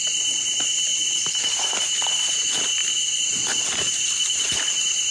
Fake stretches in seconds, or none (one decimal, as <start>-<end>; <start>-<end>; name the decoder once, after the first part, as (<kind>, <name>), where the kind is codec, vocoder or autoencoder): none